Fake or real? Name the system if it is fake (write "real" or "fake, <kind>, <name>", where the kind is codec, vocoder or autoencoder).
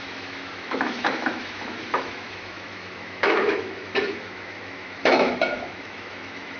fake, autoencoder, DAC-VAE